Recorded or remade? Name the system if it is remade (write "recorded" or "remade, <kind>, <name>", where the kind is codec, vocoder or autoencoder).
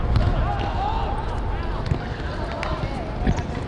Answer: recorded